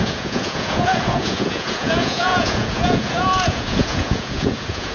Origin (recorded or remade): remade